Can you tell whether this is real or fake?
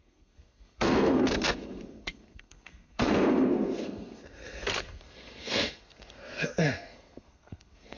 fake